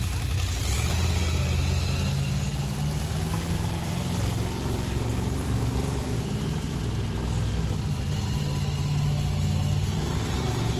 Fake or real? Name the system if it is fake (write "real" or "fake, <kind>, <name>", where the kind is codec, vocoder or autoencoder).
real